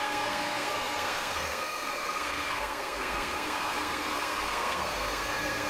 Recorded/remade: remade